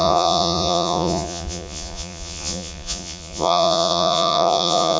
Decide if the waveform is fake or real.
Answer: fake